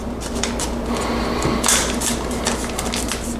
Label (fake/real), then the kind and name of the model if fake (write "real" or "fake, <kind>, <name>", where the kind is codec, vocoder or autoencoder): real